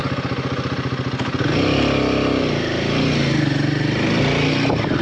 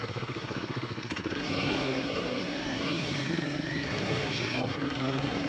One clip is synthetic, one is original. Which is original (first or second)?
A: first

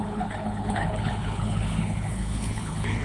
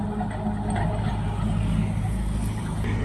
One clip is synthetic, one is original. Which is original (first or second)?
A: second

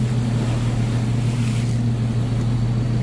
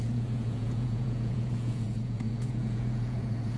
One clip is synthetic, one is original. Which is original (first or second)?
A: first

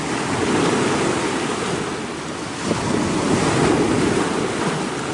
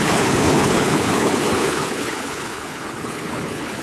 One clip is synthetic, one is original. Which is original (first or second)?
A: first